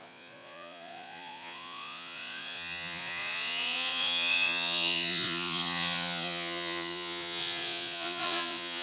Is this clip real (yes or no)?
no